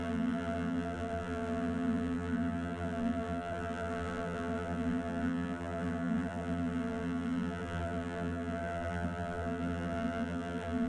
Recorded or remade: remade